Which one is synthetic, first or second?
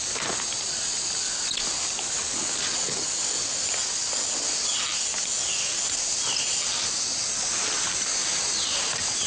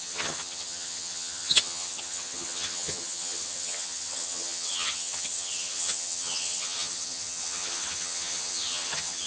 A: second